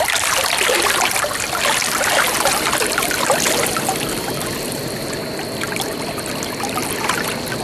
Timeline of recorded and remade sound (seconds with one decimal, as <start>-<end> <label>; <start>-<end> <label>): 0.0-7.6 recorded